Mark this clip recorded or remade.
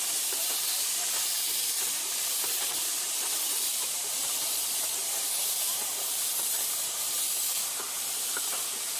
remade